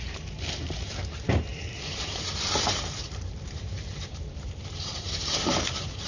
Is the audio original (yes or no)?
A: no